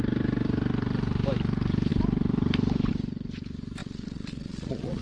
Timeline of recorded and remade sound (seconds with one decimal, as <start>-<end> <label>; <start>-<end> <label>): 0.0-3.8 recorded; 3.8-5.0 remade